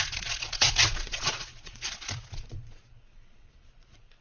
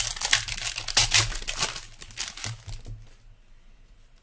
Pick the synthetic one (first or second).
first